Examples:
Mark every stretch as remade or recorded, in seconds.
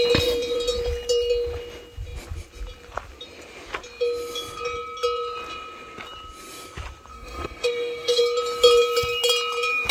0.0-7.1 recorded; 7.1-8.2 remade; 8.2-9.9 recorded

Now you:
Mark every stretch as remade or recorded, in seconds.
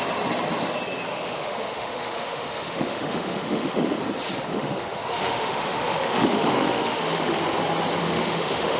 0.0-1.1 recorded; 1.1-4.0 remade; 4.0-4.5 recorded; 4.5-7.4 remade; 7.4-8.0 recorded; 8.0-8.8 remade